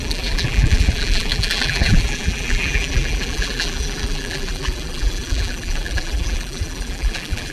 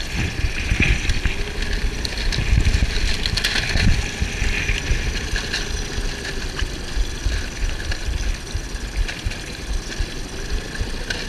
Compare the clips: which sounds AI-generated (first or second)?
first